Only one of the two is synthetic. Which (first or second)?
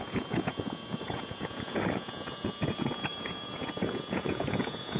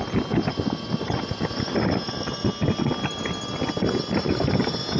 first